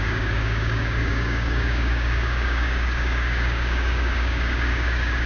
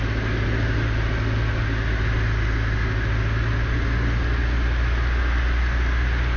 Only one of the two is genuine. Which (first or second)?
second